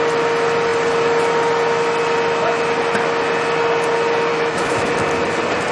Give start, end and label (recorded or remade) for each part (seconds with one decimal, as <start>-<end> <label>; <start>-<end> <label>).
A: 0.0-4.3 recorded; 4.3-4.9 remade; 4.9-5.7 recorded